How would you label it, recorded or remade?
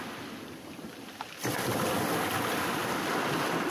recorded